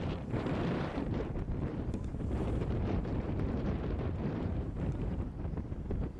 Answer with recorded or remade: remade